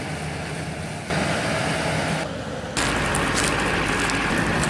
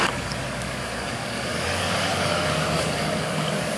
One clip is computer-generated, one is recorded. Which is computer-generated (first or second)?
second